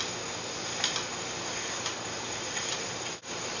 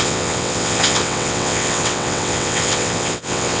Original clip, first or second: first